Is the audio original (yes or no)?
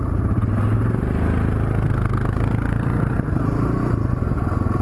yes